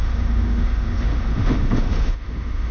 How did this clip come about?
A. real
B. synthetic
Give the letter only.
B